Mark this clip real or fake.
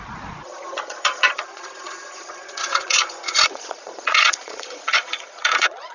fake